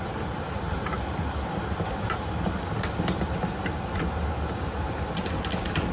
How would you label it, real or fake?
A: real